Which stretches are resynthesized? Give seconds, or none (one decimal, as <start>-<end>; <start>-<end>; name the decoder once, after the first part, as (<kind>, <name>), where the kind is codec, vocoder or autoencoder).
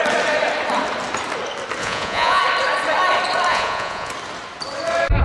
1.8-2.4 (vocoder, Vocos); 3.5-4.1